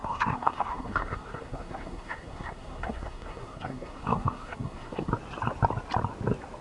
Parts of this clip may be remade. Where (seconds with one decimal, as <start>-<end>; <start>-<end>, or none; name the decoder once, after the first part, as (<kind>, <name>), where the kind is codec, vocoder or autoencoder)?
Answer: 0.0-5.1 (codec, SNAC)